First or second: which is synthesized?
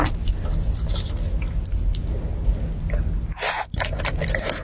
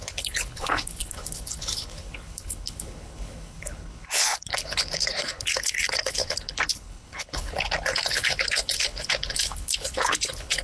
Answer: second